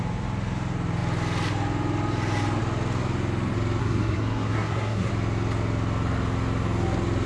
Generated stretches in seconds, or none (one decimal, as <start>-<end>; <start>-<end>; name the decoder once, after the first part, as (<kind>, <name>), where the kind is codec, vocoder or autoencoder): 3.8-5.1 (codec, SNAC)